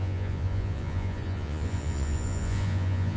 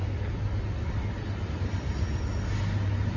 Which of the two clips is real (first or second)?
second